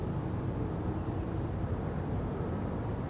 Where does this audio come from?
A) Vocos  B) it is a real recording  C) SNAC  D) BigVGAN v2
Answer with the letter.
D